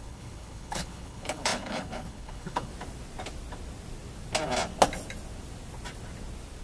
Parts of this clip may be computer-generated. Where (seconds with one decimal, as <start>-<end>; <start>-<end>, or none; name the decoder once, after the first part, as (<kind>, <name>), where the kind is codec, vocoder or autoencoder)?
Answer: 0.0-2.7 (codec, HILCodec)